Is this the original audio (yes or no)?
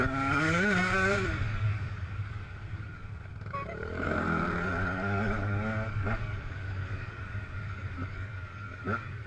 no